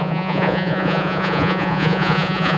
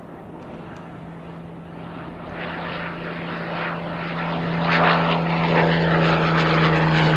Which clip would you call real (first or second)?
second